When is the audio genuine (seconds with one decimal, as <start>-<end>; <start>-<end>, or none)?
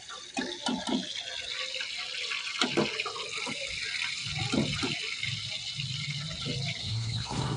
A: 0.0-6.8